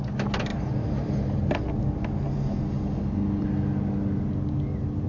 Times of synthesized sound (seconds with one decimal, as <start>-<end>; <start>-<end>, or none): none